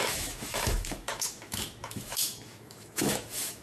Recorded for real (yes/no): no